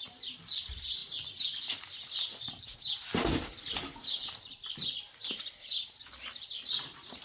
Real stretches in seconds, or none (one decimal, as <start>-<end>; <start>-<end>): 0.0-7.2